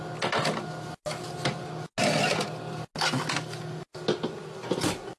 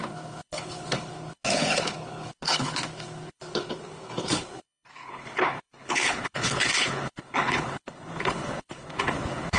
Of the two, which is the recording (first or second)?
first